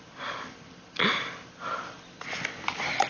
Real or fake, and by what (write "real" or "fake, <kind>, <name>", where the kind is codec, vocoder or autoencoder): real